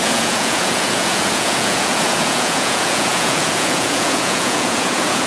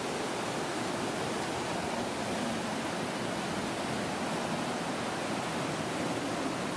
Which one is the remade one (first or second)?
first